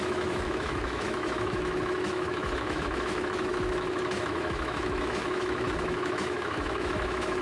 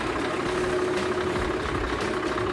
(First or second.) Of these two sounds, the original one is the second